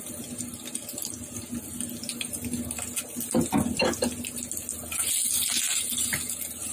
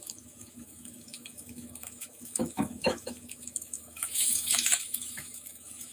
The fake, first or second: second